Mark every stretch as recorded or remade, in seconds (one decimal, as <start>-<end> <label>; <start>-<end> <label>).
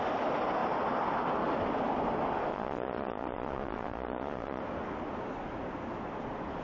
0.0-2.5 recorded; 2.5-4.6 remade; 4.6-6.6 recorded